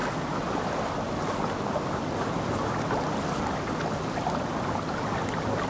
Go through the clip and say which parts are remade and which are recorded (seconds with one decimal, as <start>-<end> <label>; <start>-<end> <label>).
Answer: 0.0-5.7 recorded

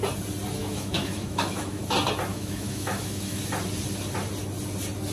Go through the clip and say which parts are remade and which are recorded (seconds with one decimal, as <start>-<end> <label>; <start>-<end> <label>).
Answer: 0.0-0.6 recorded; 0.6-1.8 remade; 1.8-2.3 recorded; 2.3-3.4 remade; 3.4-5.1 recorded

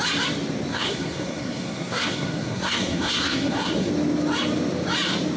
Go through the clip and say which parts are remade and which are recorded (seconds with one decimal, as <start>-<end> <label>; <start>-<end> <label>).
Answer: 0.0-0.7 recorded; 0.7-3.9 remade; 3.9-5.4 recorded

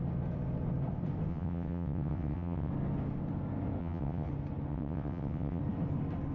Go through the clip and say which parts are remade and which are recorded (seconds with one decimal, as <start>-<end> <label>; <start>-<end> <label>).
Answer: 0.0-1.3 recorded; 1.3-2.7 remade; 2.7-3.8 recorded; 3.8-4.3 remade; 4.3-4.7 recorded; 4.7-5.6 remade; 5.6-6.3 recorded

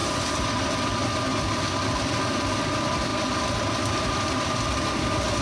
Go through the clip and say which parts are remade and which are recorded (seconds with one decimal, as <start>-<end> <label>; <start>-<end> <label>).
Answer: 0.0-0.9 remade; 0.9-1.3 recorded; 1.3-1.8 remade; 1.8-3.1 recorded; 3.1-5.4 remade

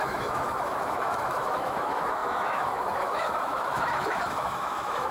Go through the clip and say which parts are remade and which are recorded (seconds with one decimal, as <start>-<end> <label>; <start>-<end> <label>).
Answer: 0.0-5.1 remade

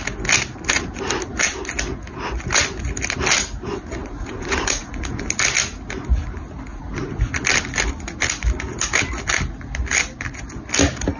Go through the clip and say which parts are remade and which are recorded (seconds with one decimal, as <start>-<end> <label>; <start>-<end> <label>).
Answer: 0.0-4.0 recorded; 4.0-5.2 remade; 5.2-6.7 recorded; 6.7-7.3 remade; 7.3-11.2 recorded

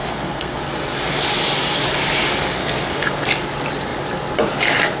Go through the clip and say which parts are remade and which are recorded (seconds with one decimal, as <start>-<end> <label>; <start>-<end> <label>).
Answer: 0.0-0.6 remade; 0.6-2.6 recorded; 2.6-3.3 remade; 3.3-5.0 recorded